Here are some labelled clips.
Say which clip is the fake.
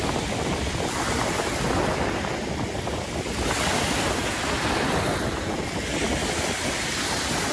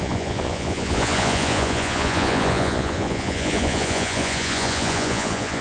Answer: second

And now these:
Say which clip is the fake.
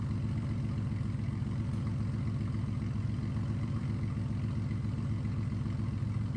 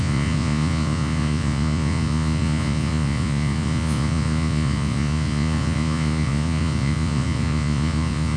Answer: second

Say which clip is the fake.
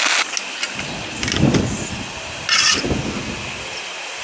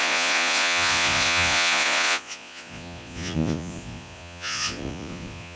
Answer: second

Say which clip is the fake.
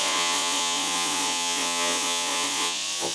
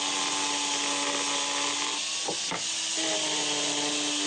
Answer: first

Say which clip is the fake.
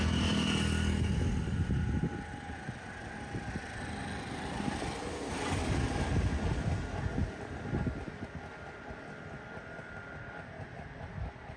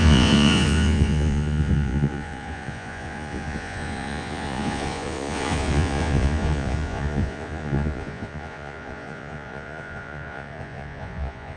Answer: second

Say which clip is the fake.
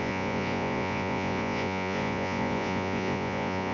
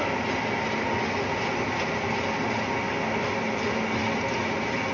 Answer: first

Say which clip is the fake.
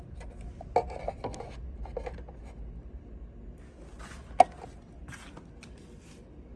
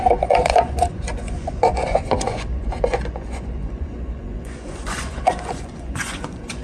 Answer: second